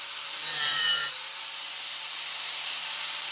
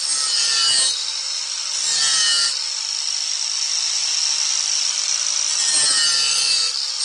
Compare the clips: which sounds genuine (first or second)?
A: second